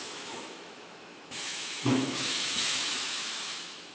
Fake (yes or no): yes